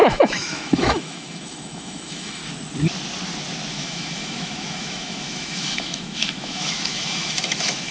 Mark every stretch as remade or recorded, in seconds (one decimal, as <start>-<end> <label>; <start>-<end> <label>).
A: 0.0-2.4 remade; 2.4-3.7 recorded; 3.7-7.9 remade